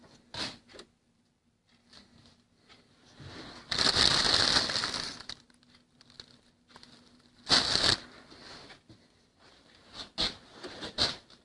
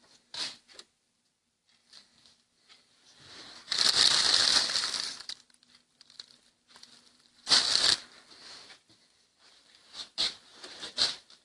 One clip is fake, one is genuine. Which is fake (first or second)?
second